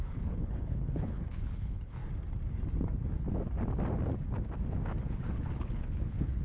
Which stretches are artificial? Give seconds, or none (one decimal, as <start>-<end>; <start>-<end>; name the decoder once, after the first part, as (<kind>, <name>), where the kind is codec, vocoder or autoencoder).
0.0-2.0 (codec, HILCodec); 5.0-6.4